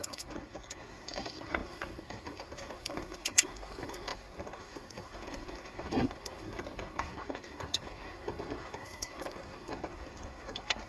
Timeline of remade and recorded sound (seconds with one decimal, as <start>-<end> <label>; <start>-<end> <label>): 0.0-10.9 remade